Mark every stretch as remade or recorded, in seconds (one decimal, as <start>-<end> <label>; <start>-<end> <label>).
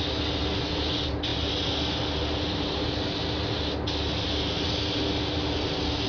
0.0-6.1 recorded